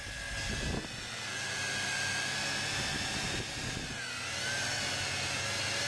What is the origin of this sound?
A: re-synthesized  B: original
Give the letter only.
B